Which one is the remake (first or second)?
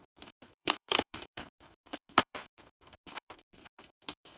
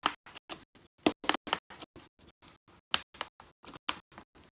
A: first